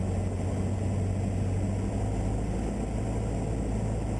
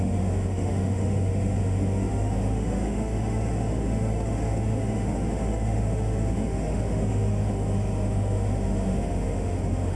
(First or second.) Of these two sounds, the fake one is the second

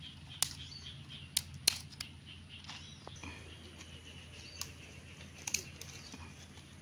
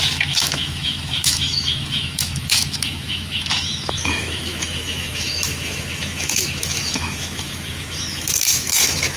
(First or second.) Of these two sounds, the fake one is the second